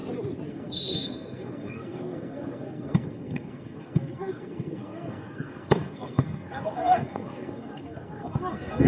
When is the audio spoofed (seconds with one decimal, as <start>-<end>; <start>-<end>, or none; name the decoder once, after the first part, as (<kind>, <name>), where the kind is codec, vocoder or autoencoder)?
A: 0.5-8.9 (codec, SNAC)

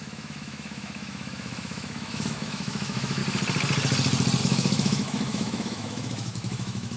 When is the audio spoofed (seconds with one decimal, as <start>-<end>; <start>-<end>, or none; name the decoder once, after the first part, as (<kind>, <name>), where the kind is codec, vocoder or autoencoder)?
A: 0.0-3.2 (autoencoder, DAC-VAE); 4.4-7.0

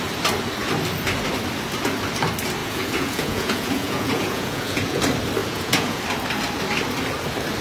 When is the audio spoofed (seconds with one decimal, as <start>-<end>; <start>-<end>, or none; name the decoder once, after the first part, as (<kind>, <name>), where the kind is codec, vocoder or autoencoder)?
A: 2.6-5.0 (vocoder, Vocos); 5.4-6.0